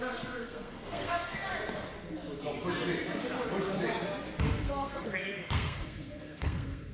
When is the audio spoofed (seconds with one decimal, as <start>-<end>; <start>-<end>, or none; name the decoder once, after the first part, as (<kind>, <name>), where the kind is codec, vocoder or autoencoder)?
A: 0.0-1.5 (codec, SNAC); 4.4-6.9